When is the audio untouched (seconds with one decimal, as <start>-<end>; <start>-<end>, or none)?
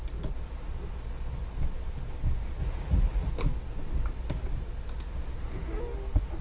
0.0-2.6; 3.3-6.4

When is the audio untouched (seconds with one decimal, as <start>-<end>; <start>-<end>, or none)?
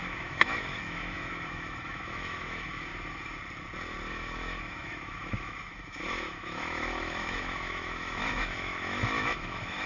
2.9-4.1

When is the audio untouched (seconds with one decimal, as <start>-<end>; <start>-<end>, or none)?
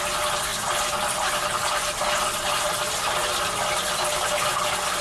0.0-5.0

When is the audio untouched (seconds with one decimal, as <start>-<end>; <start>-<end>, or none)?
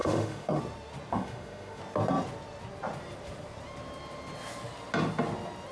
0.6-1.1; 1.8-5.7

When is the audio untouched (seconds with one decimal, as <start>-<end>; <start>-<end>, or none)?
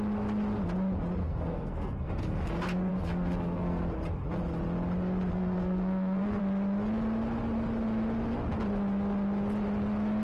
0.0-1.2; 2.5-2.9; 3.8-5.3; 6.4-10.2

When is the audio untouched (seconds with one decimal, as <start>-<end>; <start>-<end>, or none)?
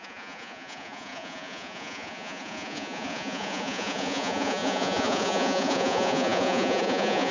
none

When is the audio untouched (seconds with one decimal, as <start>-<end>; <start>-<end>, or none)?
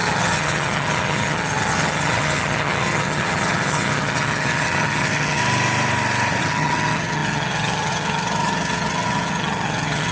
5.4-6.4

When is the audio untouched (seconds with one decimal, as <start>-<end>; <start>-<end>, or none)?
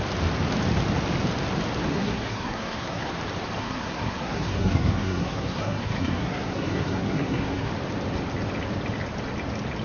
0.0-1.9; 3.1-3.6; 7.7-9.8